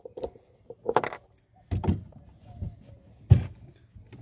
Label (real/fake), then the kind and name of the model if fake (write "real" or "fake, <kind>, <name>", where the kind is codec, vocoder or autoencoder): real